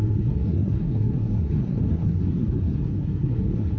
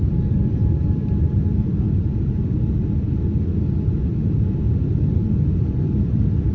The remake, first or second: first